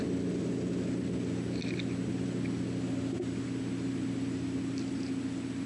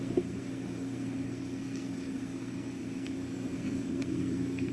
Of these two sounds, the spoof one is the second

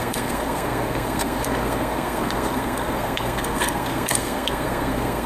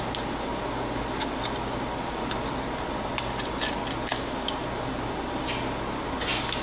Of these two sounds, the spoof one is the first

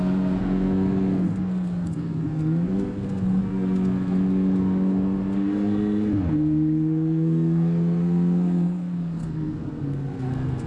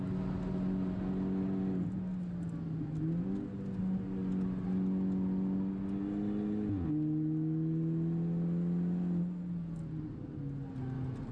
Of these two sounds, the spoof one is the first